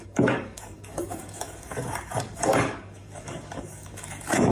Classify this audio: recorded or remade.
remade